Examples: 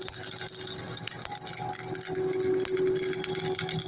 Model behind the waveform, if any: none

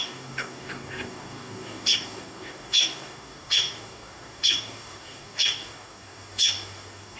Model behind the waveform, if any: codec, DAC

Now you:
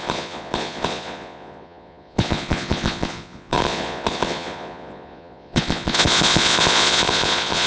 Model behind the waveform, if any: vocoder, Vocos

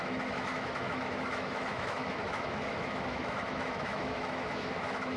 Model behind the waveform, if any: autoencoder, DAC-VAE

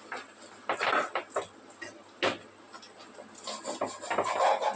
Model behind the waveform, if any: none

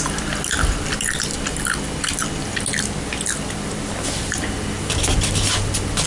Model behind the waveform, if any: none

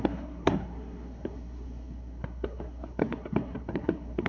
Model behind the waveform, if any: codec, SNAC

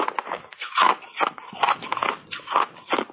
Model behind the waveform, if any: none